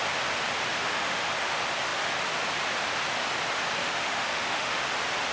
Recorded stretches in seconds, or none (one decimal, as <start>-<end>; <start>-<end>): 0.0-0.7; 1.3-3.8; 4.8-5.3